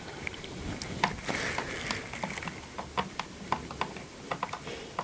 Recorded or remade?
recorded